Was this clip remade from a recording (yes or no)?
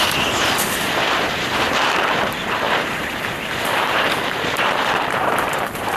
yes